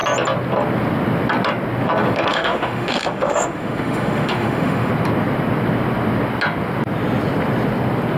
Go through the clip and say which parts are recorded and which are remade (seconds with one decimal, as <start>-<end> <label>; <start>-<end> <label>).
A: 0.0-2.3 recorded; 2.3-4.9 remade; 4.9-8.2 recorded